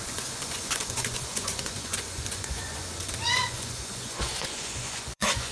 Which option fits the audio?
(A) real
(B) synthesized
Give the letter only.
B